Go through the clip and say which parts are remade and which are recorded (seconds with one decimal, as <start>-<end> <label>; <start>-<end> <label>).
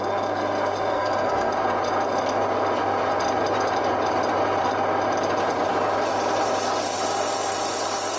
0.0-0.9 recorded; 0.9-1.5 remade; 1.5-8.2 recorded